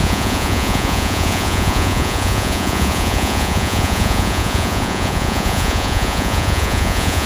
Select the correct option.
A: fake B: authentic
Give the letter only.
A